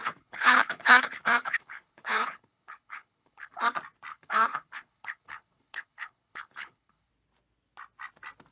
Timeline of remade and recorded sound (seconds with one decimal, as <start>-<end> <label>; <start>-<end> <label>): 0.0-3.6 remade; 3.6-4.1 recorded; 4.1-7.1 remade; 7.1-8.5 recorded

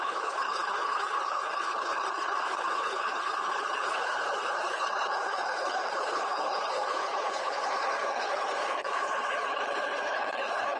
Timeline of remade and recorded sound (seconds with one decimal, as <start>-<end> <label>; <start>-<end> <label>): 0.0-10.8 remade

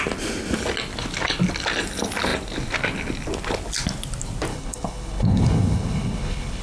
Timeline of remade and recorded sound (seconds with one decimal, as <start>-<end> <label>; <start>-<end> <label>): 0.0-4.5 recorded; 4.5-6.6 remade

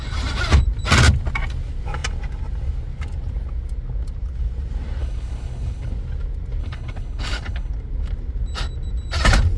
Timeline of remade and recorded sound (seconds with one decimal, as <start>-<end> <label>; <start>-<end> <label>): 0.0-5.0 recorded; 5.0-5.9 remade; 5.9-6.6 recorded; 6.6-7.7 remade; 7.7-9.6 recorded

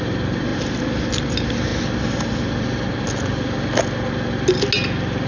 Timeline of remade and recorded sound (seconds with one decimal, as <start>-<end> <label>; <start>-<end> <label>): 0.0-5.3 recorded

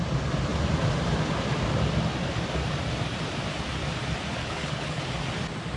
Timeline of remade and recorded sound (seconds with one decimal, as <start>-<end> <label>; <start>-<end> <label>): 0.0-4.4 recorded; 4.4-5.0 remade; 5.0-5.8 recorded

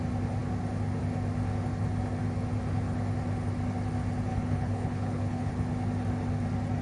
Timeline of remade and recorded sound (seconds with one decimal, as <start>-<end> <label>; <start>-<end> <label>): 0.0-4.3 recorded; 4.3-5.5 remade; 5.5-6.8 recorded

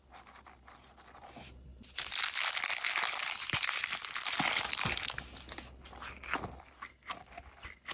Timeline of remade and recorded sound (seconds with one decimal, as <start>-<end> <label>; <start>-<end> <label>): 0.0-7.9 recorded